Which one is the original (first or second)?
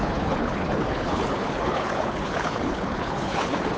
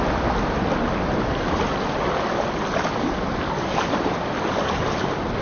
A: second